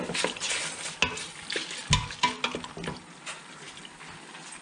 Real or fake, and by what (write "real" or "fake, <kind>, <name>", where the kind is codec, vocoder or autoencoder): real